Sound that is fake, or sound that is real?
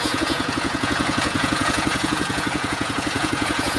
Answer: fake